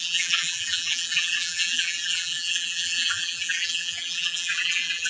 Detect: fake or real fake